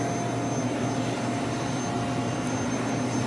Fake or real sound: real